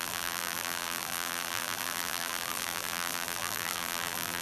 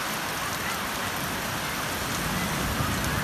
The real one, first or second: second